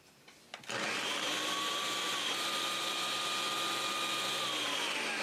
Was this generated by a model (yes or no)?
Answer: no